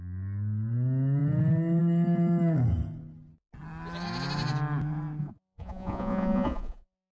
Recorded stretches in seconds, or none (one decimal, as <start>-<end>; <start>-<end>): 0.0-5.2